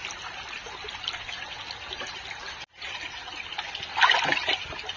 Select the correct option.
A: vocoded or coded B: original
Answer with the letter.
B